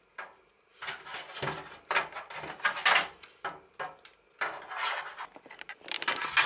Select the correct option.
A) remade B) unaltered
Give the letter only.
B